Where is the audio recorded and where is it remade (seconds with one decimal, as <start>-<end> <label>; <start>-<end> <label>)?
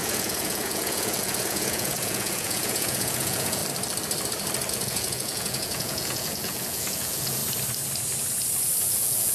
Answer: 0.0-3.6 remade; 3.6-4.7 recorded; 4.7-7.4 remade; 7.4-8.8 recorded; 8.8-9.3 remade